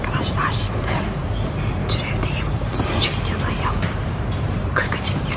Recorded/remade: remade